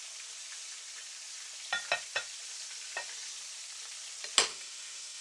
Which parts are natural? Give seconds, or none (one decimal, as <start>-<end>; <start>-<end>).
0.0-4.5